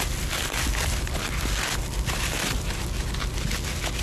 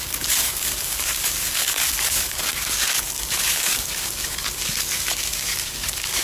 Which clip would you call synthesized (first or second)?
second